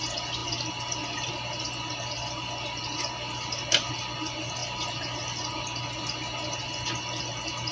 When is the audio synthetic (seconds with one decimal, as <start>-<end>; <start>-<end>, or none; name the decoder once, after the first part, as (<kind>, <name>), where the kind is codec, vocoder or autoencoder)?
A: none